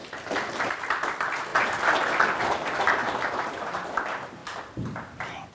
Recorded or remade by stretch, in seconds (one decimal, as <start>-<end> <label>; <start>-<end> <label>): 0.0-0.6 remade; 0.6-5.5 recorded